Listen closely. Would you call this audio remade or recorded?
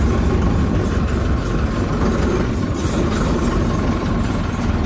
recorded